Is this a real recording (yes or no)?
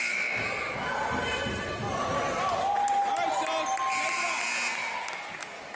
yes